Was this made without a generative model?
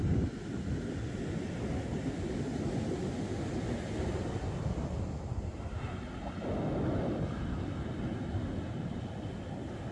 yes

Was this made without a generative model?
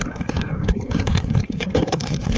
no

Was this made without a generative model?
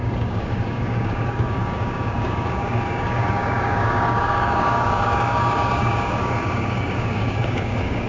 no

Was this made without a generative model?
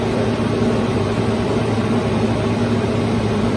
no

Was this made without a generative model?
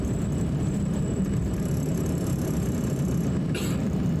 no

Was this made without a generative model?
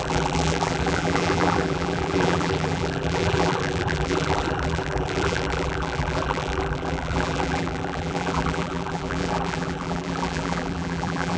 no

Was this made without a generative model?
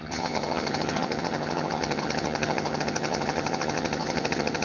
no